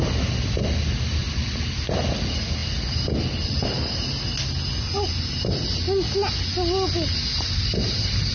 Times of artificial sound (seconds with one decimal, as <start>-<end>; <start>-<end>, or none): none